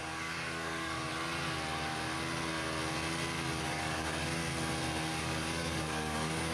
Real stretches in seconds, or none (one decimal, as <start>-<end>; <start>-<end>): 1.1-3.6; 4.4-5.2